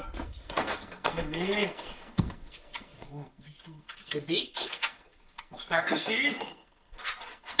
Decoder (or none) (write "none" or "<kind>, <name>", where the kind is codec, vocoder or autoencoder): codec, SNAC